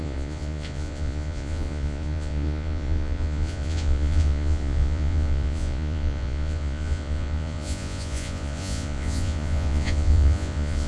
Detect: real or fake fake